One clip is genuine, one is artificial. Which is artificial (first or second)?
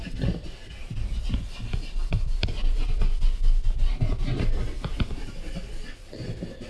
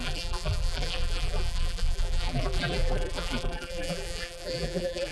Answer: second